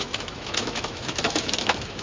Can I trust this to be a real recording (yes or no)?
no